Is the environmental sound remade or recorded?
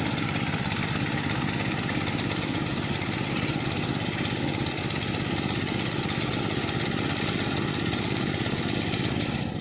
recorded